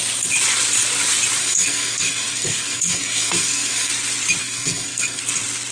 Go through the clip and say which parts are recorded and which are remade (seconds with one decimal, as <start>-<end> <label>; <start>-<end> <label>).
0.0-1.4 recorded; 1.4-3.9 remade; 3.9-4.4 recorded; 4.4-5.2 remade; 5.2-5.7 recorded